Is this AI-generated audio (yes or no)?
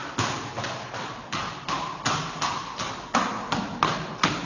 no